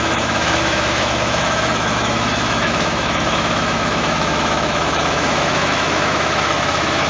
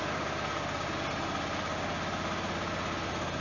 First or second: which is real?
second